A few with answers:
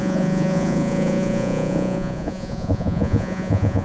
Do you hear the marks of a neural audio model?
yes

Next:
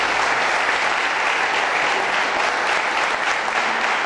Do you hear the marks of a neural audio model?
no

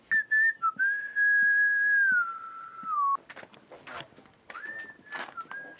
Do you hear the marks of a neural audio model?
no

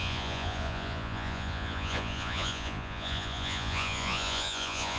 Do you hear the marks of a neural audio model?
yes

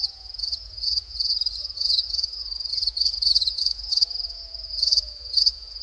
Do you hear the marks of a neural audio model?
yes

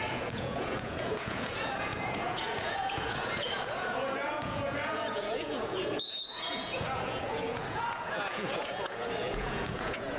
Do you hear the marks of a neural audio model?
yes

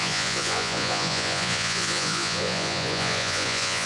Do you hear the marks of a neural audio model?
yes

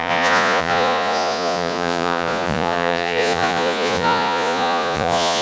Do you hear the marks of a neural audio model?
yes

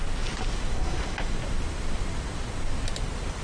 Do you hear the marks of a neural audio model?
no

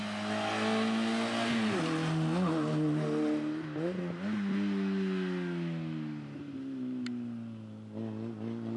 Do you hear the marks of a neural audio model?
no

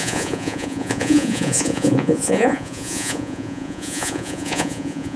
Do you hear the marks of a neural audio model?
yes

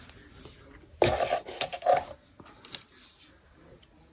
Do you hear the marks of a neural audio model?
no